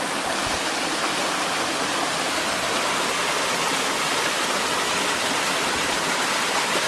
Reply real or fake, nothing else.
real